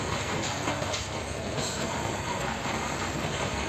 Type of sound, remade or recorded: remade